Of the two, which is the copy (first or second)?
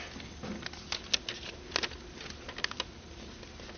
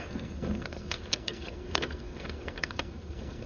second